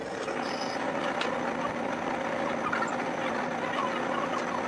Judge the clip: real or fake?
real